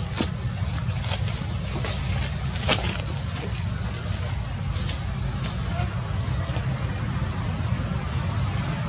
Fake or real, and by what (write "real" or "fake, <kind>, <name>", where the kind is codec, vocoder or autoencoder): real